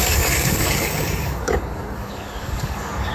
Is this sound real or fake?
fake